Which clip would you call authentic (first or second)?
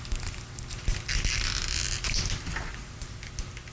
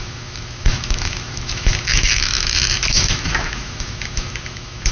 first